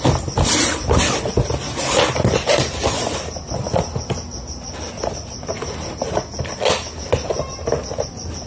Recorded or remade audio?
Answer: recorded